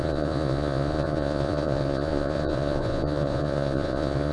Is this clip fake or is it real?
fake